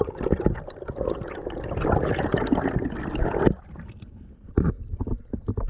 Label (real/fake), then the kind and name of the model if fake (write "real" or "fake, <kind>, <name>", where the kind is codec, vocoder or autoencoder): real